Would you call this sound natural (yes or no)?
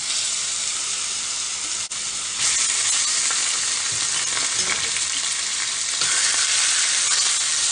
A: yes